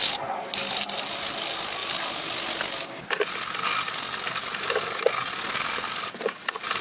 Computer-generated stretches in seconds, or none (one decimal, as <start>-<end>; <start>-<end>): none